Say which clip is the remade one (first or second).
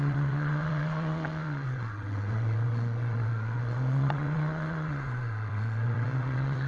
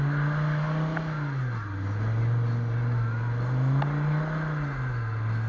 first